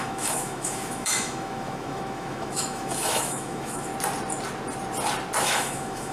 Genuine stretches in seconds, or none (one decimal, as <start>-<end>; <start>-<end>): 3.9-5.4